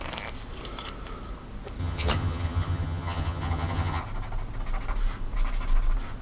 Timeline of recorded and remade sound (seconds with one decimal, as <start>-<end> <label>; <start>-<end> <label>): 0.0-1.8 recorded; 1.8-4.0 remade; 4.0-6.2 recorded